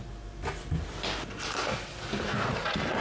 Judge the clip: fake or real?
real